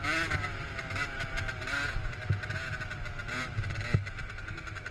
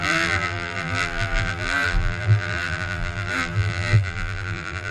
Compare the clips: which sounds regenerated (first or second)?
second